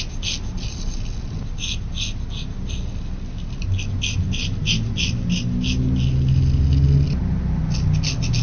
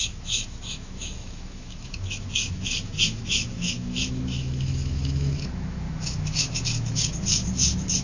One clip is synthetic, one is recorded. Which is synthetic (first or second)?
second